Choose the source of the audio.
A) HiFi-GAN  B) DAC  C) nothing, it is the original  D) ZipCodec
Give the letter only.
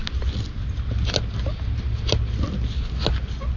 C